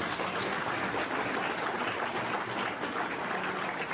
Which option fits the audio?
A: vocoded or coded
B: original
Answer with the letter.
B